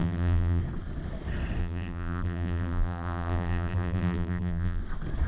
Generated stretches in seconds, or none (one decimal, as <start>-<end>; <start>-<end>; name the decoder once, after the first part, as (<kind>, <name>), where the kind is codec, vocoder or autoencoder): 0.0-0.6 (vocoder, BigVGAN v2); 1.6-4.8